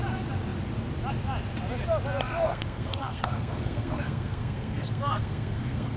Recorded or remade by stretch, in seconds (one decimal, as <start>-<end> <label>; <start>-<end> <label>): 0.0-2.4 recorded; 2.4-6.0 remade